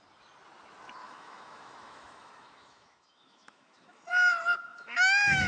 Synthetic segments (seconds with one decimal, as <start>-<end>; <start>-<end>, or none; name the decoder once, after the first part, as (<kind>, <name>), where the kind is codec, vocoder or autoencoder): 1.0-4.3 (autoencoder, DAC-VAE); 4.7-5.5